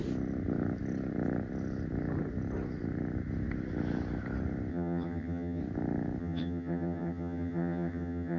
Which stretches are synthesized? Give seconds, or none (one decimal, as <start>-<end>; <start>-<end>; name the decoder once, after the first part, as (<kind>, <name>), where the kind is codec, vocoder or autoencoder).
4.7-5.6 (vocoder, HiFi-GAN); 6.2-8.4